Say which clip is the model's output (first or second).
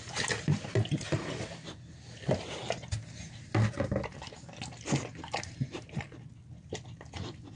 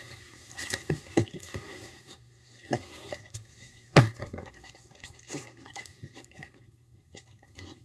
second